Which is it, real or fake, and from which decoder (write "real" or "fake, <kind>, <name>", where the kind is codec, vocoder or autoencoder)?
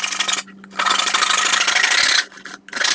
real